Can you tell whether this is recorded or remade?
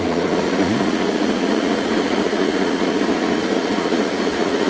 remade